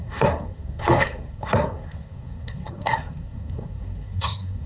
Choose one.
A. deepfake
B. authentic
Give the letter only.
A